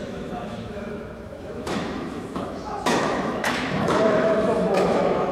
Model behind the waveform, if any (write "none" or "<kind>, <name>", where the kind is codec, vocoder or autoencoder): autoencoder, DAC-VAE